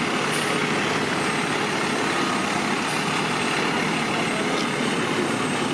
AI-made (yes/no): no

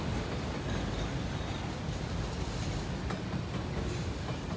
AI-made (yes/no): no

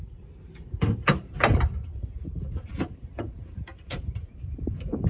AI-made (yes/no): yes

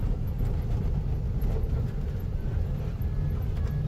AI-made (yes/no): no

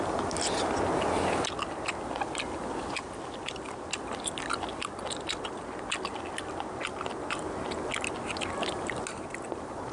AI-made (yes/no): no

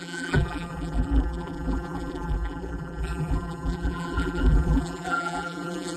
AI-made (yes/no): yes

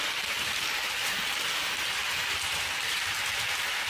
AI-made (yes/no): yes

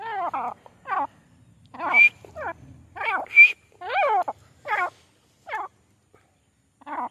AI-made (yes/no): no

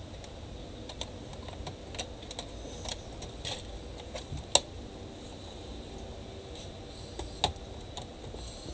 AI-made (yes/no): no